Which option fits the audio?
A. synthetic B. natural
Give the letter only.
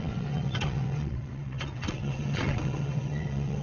A